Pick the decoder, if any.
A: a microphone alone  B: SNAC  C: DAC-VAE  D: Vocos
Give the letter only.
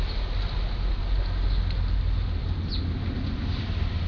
A